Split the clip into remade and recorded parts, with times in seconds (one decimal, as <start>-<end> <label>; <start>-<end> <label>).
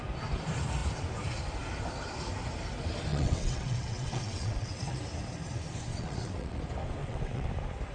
0.0-3.1 recorded; 3.1-5.0 remade; 5.0-5.9 recorded; 5.9-6.6 remade; 6.6-7.0 recorded; 7.0-7.5 remade; 7.5-7.9 recorded